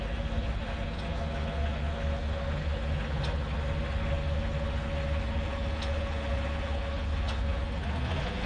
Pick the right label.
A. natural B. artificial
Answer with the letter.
A